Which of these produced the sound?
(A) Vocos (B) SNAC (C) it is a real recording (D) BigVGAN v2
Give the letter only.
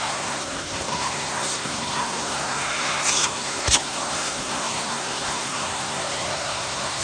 B